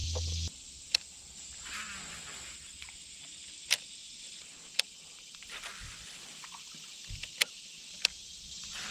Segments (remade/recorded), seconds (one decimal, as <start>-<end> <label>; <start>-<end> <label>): 0.0-4.0 recorded; 4.0-4.6 remade; 4.6-8.9 recorded